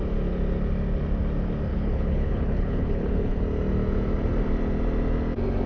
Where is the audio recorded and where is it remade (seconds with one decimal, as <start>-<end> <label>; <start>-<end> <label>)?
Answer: 0.0-1.7 recorded; 1.7-3.4 remade; 3.4-5.7 recorded